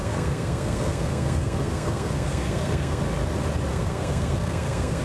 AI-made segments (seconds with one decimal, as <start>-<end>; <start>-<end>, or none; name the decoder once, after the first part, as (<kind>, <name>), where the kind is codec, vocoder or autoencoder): 0.0-3.0 (codec, SNAC); 3.7-5.0